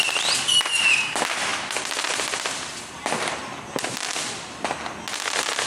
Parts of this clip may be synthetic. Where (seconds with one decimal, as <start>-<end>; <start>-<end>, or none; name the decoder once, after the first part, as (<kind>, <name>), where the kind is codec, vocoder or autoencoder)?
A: 1.5-4.9 (vocoder, BigVGAN v2)